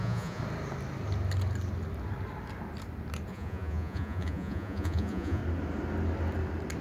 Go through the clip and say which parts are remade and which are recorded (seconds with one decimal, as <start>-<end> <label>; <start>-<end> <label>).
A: 0.0-0.4 remade; 0.4-3.3 recorded; 3.3-5.4 remade; 5.4-6.8 recorded